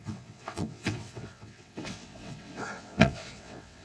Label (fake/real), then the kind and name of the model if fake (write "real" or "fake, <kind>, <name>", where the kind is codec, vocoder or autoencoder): fake, vocoder, WaveNeXt